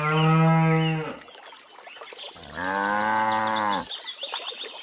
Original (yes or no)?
yes